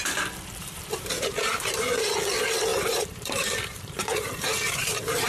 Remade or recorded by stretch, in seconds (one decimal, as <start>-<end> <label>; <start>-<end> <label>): 0.0-0.6 recorded; 0.6-1.8 remade; 1.8-2.7 recorded; 2.7-5.3 remade